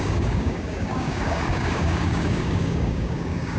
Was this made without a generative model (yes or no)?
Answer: no